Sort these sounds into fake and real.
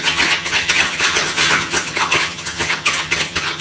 fake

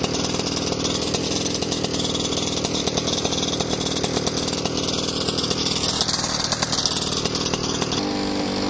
real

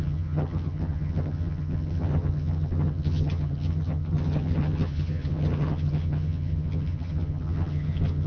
fake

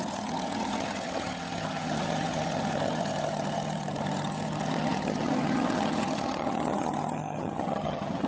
fake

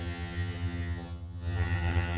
fake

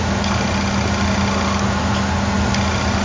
real